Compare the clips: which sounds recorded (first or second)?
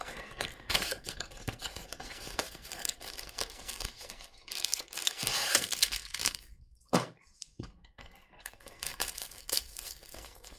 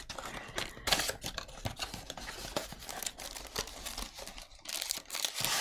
second